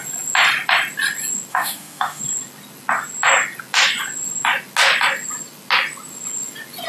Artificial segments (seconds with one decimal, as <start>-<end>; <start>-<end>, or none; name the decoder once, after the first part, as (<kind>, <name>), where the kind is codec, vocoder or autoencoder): 1.5-2.2 (autoencoder, DAC-VAE)